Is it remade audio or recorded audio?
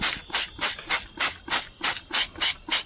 recorded